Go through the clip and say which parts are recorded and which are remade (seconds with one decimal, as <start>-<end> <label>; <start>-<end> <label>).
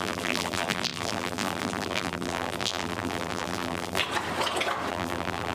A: 0.0-4.0 remade; 4.0-4.9 recorded; 4.9-5.5 remade